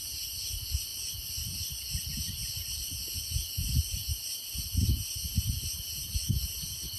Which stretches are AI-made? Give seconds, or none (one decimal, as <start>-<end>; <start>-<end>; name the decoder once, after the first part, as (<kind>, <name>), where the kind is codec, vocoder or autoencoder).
none